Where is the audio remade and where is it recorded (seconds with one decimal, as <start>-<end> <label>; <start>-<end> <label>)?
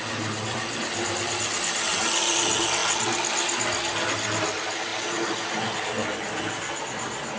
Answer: 0.0-4.9 recorded; 4.9-5.8 remade; 5.8-7.4 recorded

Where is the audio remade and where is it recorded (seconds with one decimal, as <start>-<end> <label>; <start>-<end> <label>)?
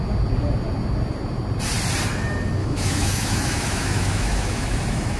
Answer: 0.0-2.6 recorded; 2.6-5.2 remade